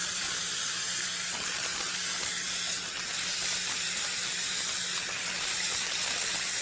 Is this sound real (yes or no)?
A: yes